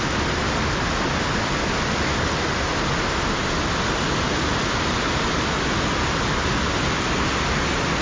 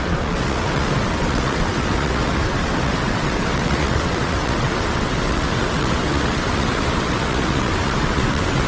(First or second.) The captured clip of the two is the first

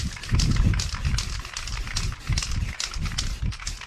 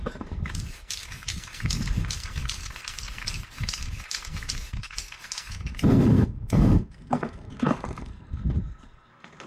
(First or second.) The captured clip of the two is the first